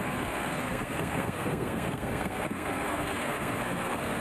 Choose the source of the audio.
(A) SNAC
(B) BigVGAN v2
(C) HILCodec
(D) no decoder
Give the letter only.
A